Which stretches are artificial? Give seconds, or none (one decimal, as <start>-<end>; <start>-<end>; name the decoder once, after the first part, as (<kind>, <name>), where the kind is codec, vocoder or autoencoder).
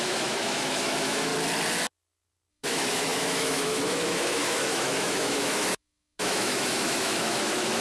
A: 0.0-1.3 (autoencoder, DAC-VAE); 2.5-7.8